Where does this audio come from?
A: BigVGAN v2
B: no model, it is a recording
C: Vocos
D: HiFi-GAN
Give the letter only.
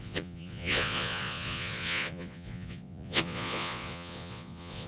C